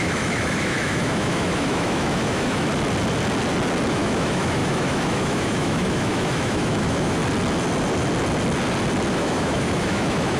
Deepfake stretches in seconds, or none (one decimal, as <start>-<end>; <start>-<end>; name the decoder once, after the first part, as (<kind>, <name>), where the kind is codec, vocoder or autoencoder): 0.0-2.7 (autoencoder, DAC-VAE); 3.9-7.2; 9.1-10.4